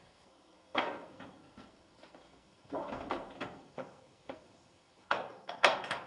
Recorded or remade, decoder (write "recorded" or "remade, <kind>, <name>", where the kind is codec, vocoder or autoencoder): remade, codec, SNAC